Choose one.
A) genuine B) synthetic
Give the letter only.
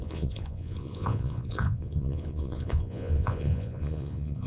B